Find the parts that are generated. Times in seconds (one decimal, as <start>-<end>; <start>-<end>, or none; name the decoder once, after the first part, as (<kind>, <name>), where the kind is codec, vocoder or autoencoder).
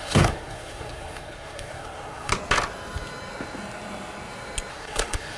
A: 0.0-2.3 (codec, SNAC); 4.7-5.4